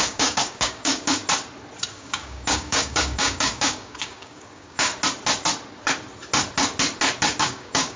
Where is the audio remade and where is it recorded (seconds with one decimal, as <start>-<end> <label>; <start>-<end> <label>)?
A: 0.0-1.2 remade; 1.2-1.9 recorded; 1.9-4.9 remade; 4.9-7.4 recorded; 7.4-8.0 remade